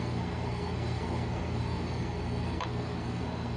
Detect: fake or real fake